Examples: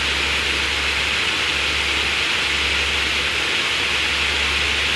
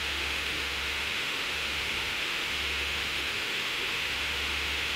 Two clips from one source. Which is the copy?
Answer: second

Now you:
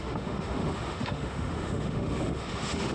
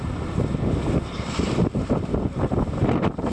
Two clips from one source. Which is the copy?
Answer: first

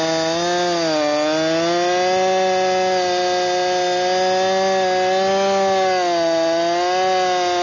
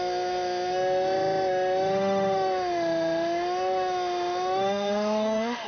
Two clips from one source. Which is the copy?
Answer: second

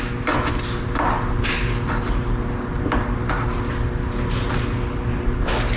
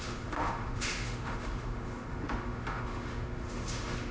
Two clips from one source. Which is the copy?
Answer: second